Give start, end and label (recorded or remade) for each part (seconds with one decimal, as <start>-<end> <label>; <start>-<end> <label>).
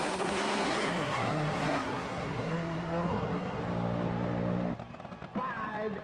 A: 0.0-3.6 remade; 3.6-6.0 recorded